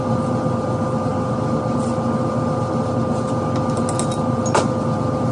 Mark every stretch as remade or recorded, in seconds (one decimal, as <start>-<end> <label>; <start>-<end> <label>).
0.0-5.3 recorded